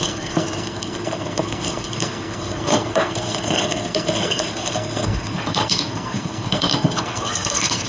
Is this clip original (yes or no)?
no